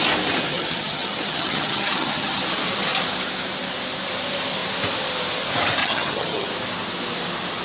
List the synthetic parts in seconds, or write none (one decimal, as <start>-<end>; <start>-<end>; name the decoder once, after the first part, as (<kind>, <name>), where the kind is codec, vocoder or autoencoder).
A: 0.5-2.4 (vocoder, HiFi-GAN); 5.8-6.5